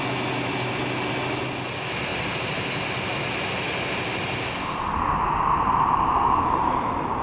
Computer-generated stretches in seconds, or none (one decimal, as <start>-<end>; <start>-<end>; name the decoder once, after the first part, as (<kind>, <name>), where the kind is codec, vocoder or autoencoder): 2.1-2.8 (vocoder, BigVGAN v2)

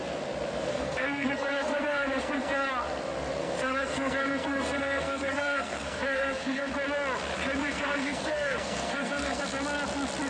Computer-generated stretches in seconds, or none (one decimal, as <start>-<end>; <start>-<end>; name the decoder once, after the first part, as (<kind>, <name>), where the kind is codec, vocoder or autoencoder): 0.7-2.7 (codec, SNAC); 3.4-6.7; 7.6-9.4

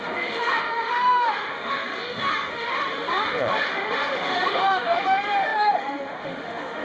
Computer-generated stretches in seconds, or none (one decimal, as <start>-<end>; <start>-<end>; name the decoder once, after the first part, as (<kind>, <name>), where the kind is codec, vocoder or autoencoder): 0.0-6.8 (autoencoder, DAC-VAE)

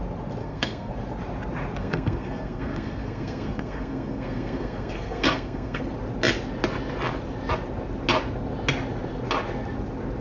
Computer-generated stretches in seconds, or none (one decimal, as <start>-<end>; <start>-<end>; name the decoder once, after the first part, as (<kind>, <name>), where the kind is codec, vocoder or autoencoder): 0.4-0.9 (codec, SNAC); 1.8-5.8

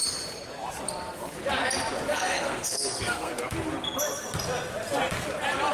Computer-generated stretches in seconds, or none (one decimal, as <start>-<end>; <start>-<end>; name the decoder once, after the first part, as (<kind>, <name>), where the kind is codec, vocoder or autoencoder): 2.1-3.3 (codec, SNAC)

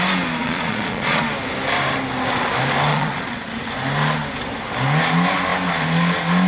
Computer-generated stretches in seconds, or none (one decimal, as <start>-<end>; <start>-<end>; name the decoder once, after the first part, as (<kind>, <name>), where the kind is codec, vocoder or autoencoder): 0.4-1.2 (vocoder, Vocos); 2.9-3.5

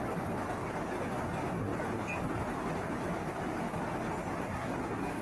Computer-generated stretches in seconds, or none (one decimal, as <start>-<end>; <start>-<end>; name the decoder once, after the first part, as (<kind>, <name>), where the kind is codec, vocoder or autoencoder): 4.4-5.2 (codec, SNAC)

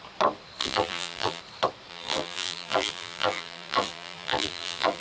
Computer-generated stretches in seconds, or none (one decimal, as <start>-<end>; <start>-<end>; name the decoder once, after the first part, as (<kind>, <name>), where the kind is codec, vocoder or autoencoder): 0.6-1.4 (vocoder, BigVGAN v2); 1.9-5.0